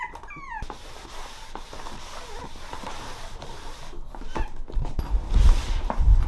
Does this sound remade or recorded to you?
recorded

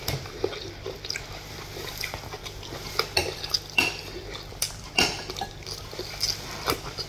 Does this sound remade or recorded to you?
recorded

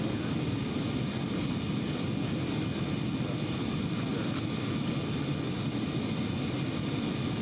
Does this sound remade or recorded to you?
recorded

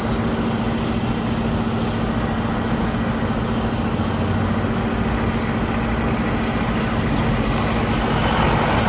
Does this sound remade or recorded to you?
recorded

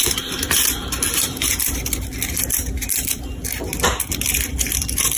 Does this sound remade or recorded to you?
recorded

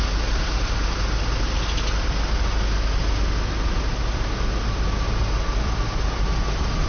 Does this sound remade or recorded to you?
recorded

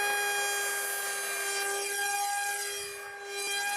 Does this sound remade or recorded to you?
recorded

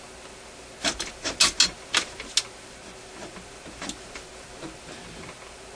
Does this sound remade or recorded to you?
recorded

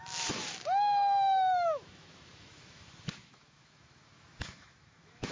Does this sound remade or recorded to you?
remade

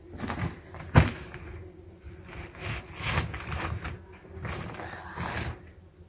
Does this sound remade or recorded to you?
recorded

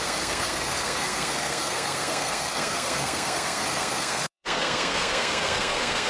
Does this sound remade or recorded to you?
remade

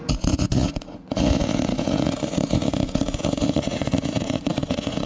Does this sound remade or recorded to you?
remade